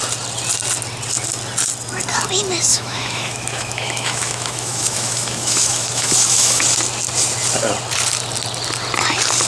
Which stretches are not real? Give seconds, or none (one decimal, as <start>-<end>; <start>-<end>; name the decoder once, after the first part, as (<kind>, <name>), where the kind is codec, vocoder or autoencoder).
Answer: 2.7-6.6 (autoencoder, DAC-VAE)